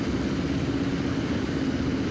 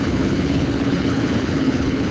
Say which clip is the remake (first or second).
second